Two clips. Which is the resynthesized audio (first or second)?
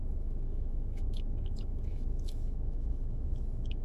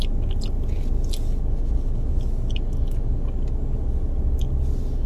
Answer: first